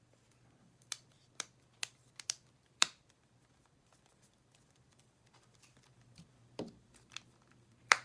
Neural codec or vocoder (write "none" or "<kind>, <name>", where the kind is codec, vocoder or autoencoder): vocoder, BigVGAN v2